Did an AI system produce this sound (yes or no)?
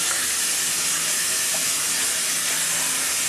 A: no